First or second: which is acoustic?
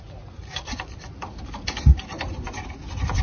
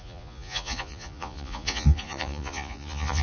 first